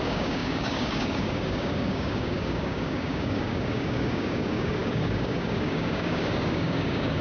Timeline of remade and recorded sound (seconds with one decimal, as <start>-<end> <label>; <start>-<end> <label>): 0.0-7.2 remade